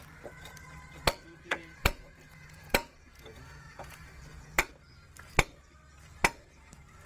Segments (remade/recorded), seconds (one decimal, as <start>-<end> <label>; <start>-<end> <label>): 0.0-1.5 recorded; 1.5-4.7 remade; 4.7-7.1 recorded